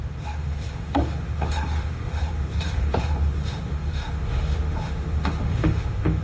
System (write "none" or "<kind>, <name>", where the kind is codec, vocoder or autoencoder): autoencoder, DAC-VAE